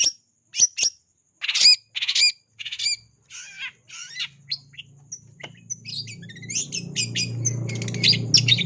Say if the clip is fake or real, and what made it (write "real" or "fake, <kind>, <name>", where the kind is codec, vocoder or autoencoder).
real